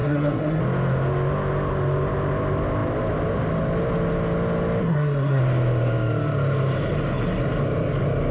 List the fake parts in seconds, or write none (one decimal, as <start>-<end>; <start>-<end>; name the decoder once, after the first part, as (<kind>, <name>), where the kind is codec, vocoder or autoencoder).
0.0-0.6 (codec, SNAC); 4.8-5.4